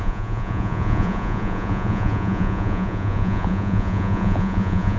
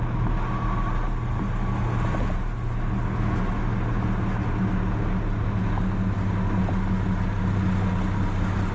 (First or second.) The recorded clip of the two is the second